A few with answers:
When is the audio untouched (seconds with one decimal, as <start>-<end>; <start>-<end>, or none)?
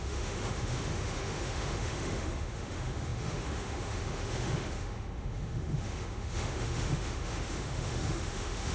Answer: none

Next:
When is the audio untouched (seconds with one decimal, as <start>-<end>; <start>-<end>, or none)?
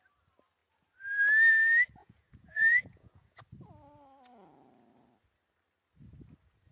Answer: 0.0-2.0; 3.4-6.7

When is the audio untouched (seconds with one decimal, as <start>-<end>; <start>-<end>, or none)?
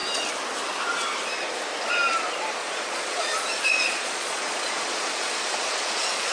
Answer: 0.0-2.6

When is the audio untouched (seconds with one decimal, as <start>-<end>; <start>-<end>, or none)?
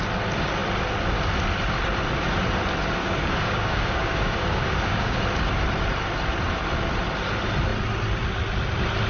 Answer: 0.0-3.0; 5.2-9.1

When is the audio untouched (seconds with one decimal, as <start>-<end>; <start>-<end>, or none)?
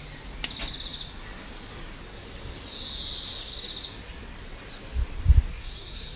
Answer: 0.0-5.5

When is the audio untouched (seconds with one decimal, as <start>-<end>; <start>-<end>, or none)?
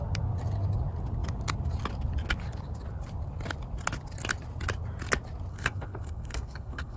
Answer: 0.0-5.5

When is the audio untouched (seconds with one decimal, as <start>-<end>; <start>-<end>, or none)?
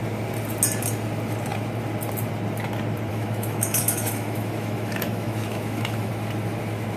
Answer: 0.0-3.1; 6.1-7.0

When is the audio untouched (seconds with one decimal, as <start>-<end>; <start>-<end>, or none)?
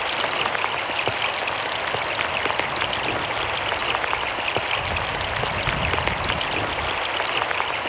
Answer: 0.0-7.9